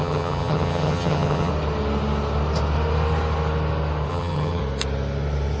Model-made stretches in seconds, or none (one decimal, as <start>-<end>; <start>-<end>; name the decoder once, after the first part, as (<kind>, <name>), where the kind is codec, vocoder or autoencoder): 0.0-1.5 (vocoder, HiFi-GAN); 4.1-4.6